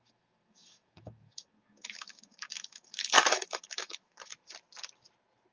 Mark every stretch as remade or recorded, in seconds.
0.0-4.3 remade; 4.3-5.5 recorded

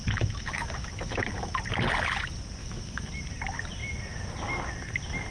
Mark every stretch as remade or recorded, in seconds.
0.0-1.5 remade; 1.5-2.6 recorded; 2.6-3.1 remade; 3.1-5.3 recorded

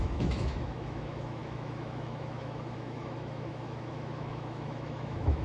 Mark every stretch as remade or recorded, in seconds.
0.0-5.4 remade

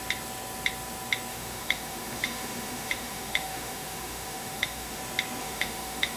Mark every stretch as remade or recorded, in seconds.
0.0-1.3 recorded; 1.3-5.0 remade; 5.0-5.4 recorded; 5.4-6.2 remade